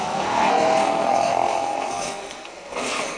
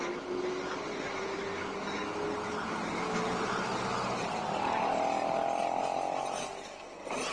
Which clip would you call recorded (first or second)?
second